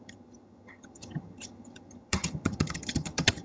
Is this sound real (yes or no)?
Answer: no